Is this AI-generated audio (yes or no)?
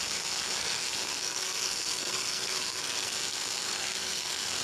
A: yes